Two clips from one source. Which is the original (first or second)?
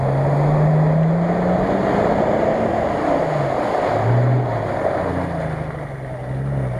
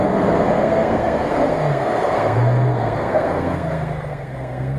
first